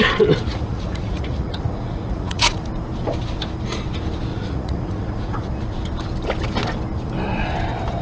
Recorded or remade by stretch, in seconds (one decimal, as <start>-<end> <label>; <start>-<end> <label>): 0.0-0.5 recorded; 0.5-2.6 remade; 2.6-4.3 recorded; 4.3-5.5 remade; 5.5-8.0 recorded